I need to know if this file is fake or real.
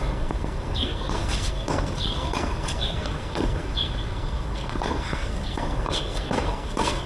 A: fake